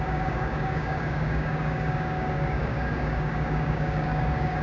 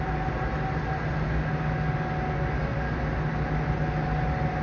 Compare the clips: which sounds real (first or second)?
second